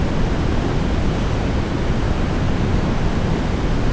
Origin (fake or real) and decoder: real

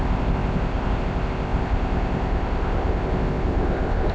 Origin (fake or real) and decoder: fake, codec, ZipCodec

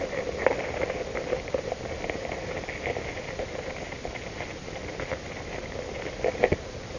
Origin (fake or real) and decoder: real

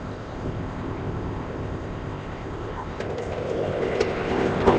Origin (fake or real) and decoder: fake, codec, ZipCodec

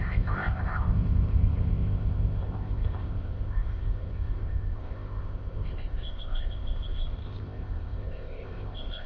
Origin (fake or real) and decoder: fake, codec, ZipCodec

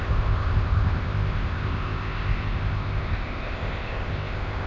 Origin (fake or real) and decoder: fake, codec, ZipCodec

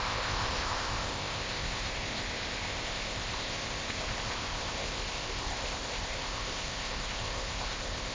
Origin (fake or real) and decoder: fake, codec, ZipCodec